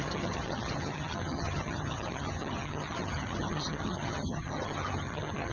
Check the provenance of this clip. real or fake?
fake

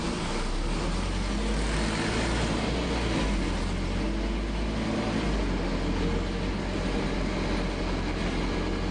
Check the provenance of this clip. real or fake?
real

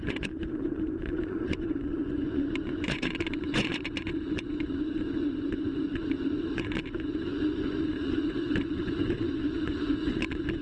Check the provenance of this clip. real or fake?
fake